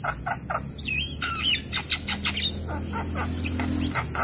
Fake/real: real